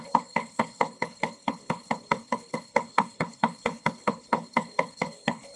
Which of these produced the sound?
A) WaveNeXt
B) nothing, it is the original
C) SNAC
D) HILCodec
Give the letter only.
D